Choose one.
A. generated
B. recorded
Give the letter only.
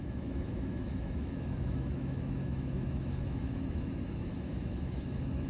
A